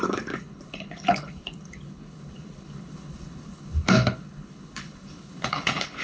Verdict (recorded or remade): remade